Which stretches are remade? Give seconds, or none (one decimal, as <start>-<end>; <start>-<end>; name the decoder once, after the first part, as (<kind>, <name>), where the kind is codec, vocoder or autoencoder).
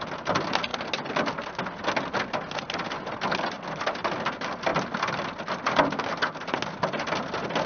none